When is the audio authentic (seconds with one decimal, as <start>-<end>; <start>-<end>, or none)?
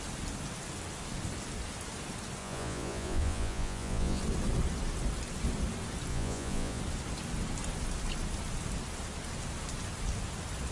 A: 0.0-2.4; 4.2-6.1; 6.8-10.7